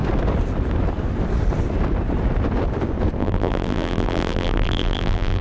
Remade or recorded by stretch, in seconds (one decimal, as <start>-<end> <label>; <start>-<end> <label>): 0.0-3.2 recorded; 3.2-5.4 remade